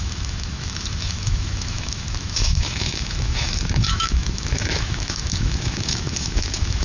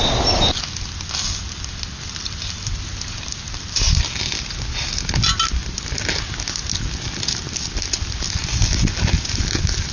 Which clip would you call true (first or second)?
second